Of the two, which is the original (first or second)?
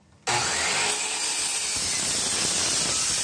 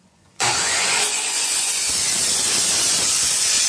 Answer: first